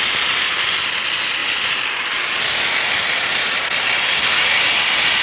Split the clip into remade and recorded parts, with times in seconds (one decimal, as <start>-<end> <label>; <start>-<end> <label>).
0.0-5.2 recorded